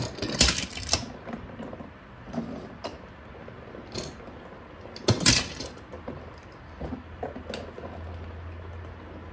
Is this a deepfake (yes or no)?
no